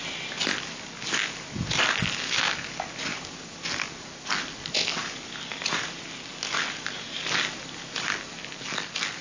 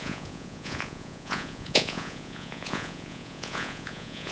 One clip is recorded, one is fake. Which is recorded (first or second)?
first